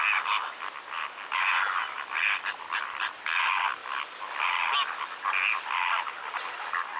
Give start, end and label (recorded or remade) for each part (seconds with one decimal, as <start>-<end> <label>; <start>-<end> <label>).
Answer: 0.0-7.0 recorded